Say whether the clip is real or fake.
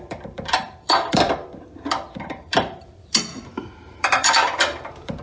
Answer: fake